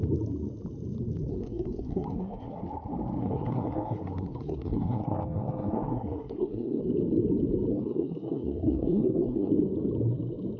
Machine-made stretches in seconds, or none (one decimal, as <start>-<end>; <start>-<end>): 1.3-2.6; 3.2-6.8; 7.7-9.5